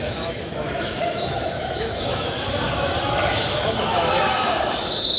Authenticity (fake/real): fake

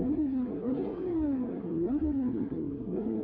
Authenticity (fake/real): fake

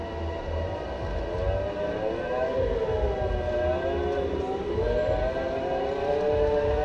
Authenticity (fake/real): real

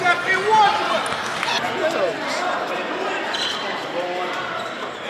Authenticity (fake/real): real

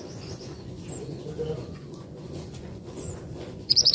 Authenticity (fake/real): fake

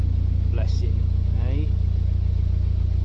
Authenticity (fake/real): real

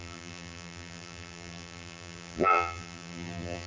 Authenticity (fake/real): fake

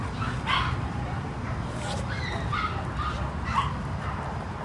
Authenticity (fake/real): real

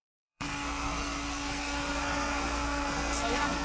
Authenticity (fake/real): fake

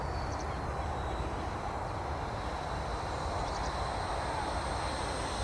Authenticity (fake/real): real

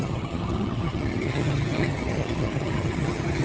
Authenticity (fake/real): fake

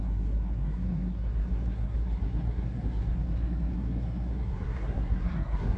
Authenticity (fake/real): fake